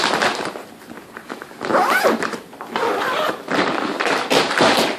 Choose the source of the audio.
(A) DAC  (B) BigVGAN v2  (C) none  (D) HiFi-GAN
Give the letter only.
C